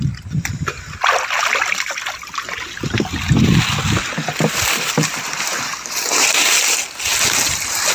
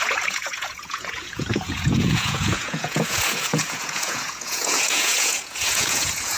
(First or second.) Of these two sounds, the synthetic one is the second